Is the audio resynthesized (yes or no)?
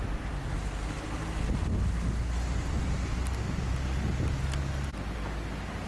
no